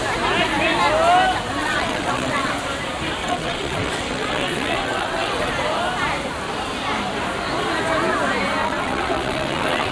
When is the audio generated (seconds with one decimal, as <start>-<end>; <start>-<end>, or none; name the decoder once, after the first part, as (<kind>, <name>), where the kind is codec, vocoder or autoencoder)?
1.6-2.5 (vocoder, WaveNeXt); 3.2-5.5; 8.6-9.9